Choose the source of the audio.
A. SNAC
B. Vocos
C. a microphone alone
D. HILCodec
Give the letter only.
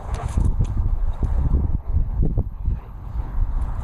D